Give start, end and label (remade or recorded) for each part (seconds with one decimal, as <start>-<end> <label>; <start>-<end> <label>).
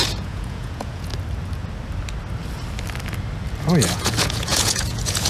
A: 0.0-1.1 remade; 1.1-3.6 recorded; 3.6-5.3 remade